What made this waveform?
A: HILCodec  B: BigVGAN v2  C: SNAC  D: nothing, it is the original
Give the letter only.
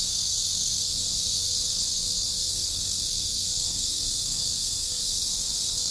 C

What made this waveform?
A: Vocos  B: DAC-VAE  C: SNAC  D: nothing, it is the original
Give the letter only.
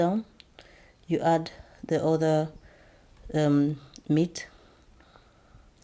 D